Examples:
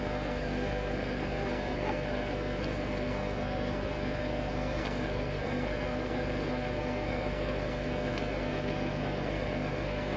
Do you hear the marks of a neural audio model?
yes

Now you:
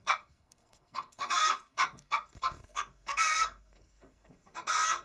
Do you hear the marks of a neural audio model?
yes